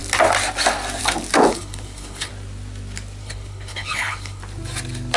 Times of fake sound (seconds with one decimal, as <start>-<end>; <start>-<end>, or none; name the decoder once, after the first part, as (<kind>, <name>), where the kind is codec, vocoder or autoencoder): 1.5-2.3 (codec, HILCodec); 3.2-4.4